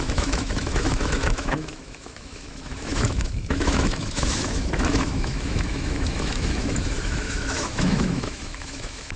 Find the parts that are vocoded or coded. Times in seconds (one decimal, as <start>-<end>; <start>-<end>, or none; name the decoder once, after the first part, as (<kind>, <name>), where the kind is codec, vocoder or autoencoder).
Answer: 0.0-9.2 (autoencoder, DAC-VAE)